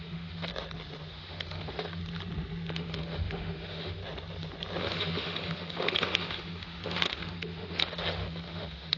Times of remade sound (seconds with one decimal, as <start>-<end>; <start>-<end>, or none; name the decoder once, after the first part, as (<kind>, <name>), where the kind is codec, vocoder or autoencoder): 0.0-0.5 (autoencoder, DAC-VAE); 1.1-2.0; 2.7-4.0; 4.8-9.0